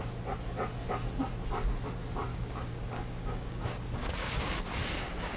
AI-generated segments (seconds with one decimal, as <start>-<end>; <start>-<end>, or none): 2.3-4.6